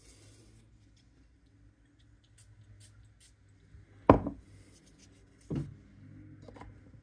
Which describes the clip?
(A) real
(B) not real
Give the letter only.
A